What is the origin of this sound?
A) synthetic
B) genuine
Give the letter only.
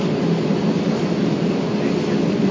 B